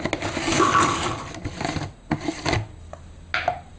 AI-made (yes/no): no